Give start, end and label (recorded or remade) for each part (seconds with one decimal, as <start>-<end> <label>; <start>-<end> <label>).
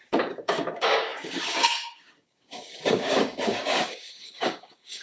0.0-5.0 remade